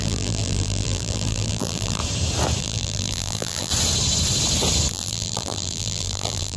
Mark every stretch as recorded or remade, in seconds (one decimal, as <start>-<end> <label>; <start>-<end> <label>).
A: 0.0-2.0 remade; 2.0-2.6 recorded; 2.6-3.7 remade; 3.7-4.9 recorded; 4.9-6.6 remade